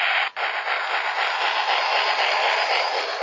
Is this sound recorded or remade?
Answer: recorded